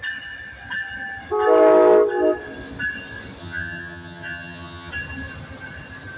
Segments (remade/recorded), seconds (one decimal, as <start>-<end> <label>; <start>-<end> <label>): 0.0-3.4 recorded; 3.4-4.9 remade; 4.9-6.2 recorded